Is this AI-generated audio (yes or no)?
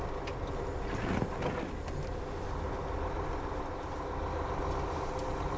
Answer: no